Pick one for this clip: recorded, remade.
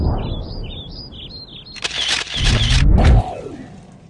recorded